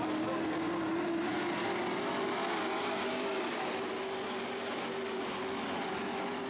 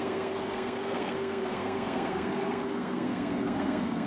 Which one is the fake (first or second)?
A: second